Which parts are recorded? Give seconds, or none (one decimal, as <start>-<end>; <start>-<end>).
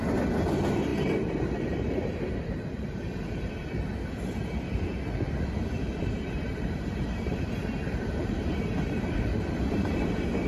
0.0-0.9; 3.5-5.9; 10.0-10.5